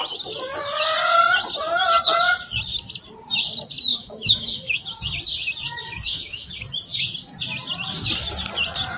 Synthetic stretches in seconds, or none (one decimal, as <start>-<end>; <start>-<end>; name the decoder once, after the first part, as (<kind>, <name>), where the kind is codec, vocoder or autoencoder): 3.9-5.0 (autoencoder, DAC-VAE); 5.8-6.5